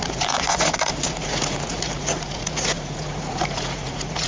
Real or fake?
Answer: fake